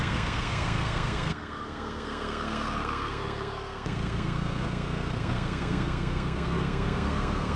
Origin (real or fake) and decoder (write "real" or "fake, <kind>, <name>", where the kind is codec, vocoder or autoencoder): fake, codec, SNAC